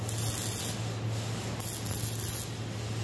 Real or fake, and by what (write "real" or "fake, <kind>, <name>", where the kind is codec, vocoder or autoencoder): real